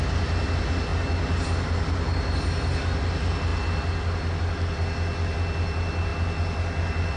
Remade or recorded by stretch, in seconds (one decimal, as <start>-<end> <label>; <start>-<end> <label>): 0.0-7.2 recorded